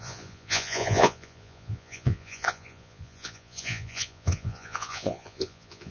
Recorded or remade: remade